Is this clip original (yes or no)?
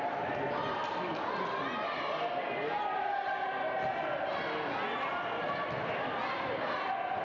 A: yes